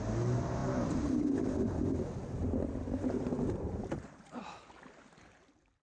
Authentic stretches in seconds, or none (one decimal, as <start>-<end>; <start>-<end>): 0.0-2.4; 4.4-5.8

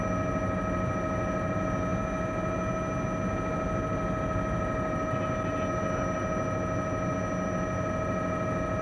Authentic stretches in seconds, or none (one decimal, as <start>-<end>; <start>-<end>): 0.0-8.8

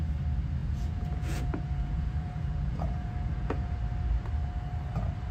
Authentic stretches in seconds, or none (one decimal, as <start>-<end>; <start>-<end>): 0.0-0.6; 3.8-5.3

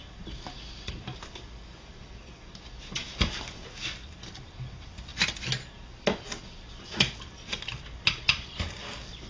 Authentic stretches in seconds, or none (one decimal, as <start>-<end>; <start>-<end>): 0.0-9.3

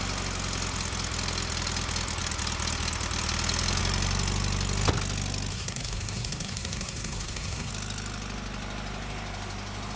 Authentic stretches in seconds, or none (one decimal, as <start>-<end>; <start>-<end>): 0.0-5.5; 7.7-10.0

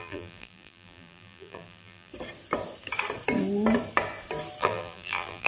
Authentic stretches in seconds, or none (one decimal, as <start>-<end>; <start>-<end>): 2.1-4.6

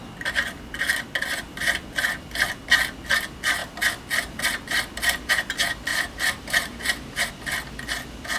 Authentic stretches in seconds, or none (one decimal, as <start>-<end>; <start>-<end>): 0.0-5.9; 7.3-8.4